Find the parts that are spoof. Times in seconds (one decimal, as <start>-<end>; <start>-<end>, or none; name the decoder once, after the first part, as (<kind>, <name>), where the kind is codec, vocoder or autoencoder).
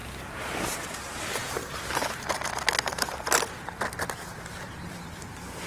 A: 0.0-0.6 (vocoder, BigVGAN v2); 1.4-2.5; 4.3-5.7